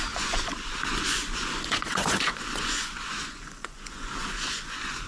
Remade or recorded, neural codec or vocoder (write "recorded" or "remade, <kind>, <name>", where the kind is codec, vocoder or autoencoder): remade, vocoder, Vocos